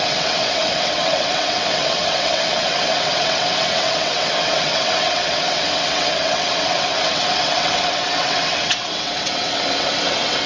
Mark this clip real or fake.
fake